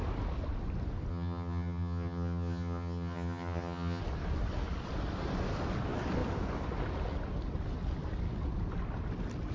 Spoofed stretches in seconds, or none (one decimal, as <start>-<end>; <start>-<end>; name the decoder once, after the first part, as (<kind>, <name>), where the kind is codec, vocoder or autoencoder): 1.1-4.0 (vocoder, HiFi-GAN)